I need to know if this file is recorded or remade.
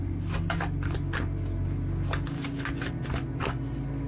recorded